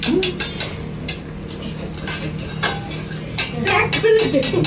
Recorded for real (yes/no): yes